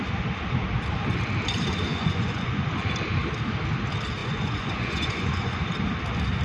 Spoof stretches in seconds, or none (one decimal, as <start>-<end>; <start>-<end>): 1.9-2.6; 4.2-5.6